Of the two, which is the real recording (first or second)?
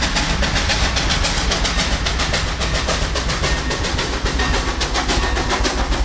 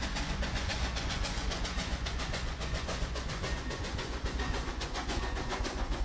first